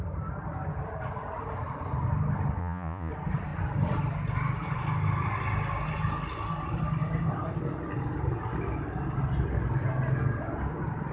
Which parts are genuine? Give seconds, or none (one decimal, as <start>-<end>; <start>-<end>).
0.0-2.6; 3.1-11.1